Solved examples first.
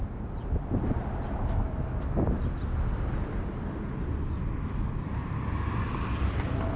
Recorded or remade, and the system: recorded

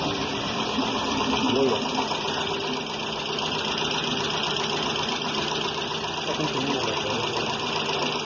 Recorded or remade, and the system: recorded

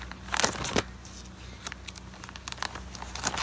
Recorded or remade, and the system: recorded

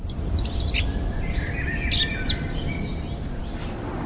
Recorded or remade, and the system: recorded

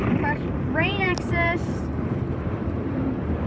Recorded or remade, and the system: remade, vocoder, BigVGAN v2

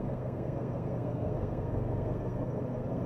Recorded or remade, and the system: remade, codec, SNAC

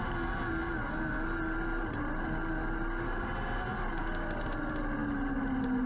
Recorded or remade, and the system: recorded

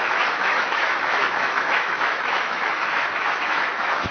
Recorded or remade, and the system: remade, autoencoder, DAC-VAE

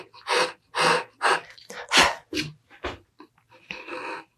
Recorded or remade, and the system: recorded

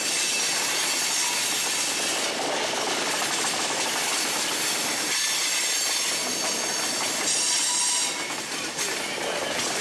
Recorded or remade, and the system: recorded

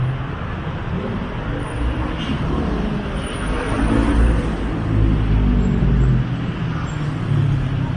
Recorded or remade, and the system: recorded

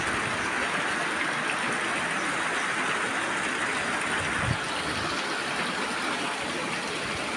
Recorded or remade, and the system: recorded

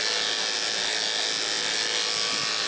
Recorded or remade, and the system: recorded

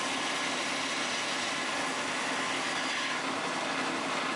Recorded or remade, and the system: recorded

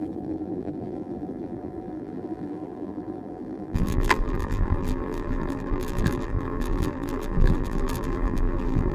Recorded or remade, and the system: remade, vocoder, BigVGAN v2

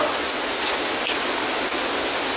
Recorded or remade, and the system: recorded